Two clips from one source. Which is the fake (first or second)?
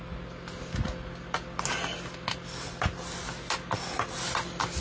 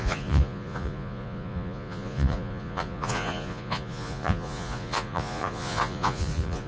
second